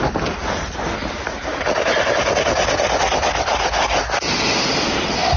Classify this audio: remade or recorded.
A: recorded